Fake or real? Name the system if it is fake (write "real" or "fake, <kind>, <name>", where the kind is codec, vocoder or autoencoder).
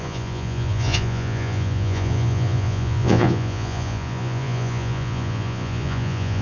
fake, vocoder, Vocos